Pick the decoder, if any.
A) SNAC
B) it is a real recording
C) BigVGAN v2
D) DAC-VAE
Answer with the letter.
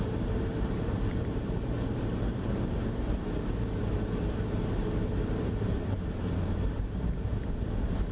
C